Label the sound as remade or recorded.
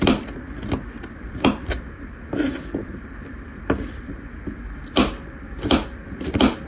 remade